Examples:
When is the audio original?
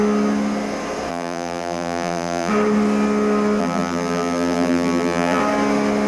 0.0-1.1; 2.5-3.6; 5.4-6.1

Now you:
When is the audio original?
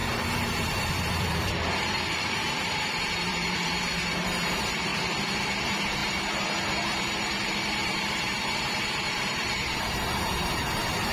4.9-5.5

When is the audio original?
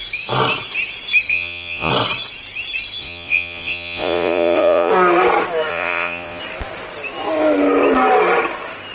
0.0-1.3; 1.9-3.0; 4.9-5.7; 6.4-8.9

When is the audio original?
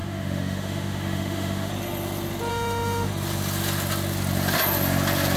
1.7-2.5; 3.1-5.4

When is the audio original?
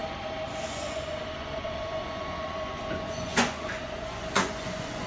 0.0-0.6